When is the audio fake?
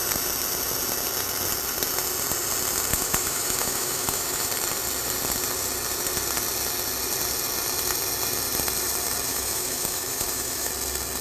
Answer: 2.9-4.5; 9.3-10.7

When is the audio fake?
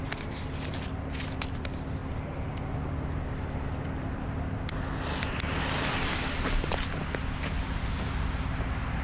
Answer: none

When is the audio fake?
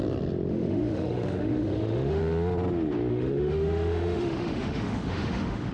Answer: 0.5-2.2; 3.1-5.7